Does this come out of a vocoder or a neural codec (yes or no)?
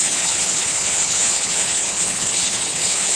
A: yes